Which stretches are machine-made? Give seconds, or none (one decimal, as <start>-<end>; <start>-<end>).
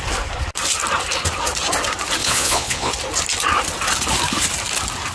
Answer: 2.2-2.9